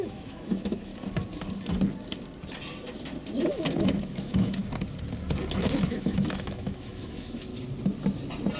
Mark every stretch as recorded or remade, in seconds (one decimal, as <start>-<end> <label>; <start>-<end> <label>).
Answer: 0.0-0.9 remade; 0.9-3.5 recorded; 3.5-4.6 remade; 4.6-5.6 recorded; 5.6-7.5 remade; 7.5-8.6 recorded